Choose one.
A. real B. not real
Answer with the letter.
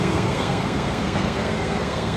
B